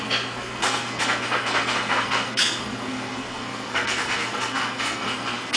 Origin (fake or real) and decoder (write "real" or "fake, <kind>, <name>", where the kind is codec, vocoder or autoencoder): fake, codec, SNAC